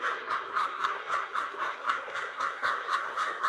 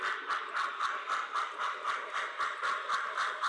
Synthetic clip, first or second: first